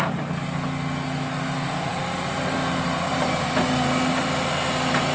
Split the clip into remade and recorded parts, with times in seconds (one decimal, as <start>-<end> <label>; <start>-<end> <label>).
0.0-5.1 recorded

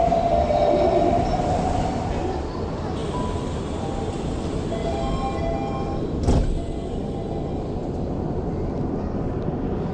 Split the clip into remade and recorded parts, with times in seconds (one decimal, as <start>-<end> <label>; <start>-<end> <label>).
0.0-9.9 recorded

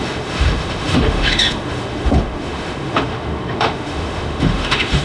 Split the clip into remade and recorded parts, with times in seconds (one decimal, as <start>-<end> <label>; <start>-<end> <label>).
0.0-5.0 remade

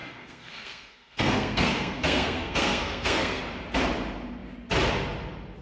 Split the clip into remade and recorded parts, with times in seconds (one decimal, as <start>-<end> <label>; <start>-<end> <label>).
0.0-3.4 remade; 3.4-5.6 recorded

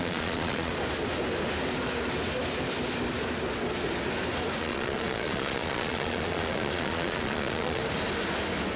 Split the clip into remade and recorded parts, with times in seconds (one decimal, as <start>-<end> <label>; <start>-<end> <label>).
0.0-0.7 remade; 0.7-4.6 recorded; 4.6-7.8 remade; 7.8-8.8 recorded

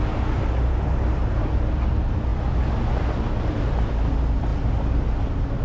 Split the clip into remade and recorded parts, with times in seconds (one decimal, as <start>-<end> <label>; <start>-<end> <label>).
0.0-1.2 recorded; 1.2-1.9 remade; 1.9-4.5 recorded; 4.5-5.0 remade; 5.0-5.6 recorded

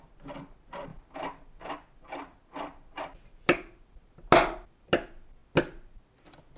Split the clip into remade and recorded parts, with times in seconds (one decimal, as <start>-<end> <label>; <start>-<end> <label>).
0.0-6.6 recorded

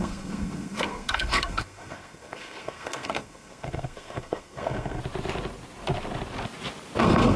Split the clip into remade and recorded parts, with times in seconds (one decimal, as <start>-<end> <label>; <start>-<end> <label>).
0.0-5.0 remade; 5.0-7.0 recorded; 7.0-7.4 remade